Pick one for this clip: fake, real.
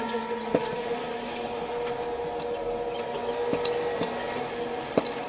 real